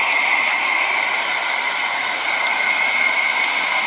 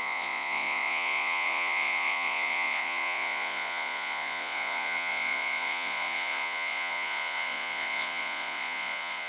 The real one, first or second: first